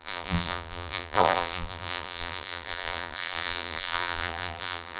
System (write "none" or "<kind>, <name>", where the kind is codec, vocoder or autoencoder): vocoder, BigVGAN v2